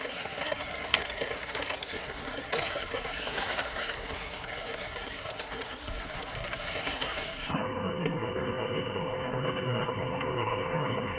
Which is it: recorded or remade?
remade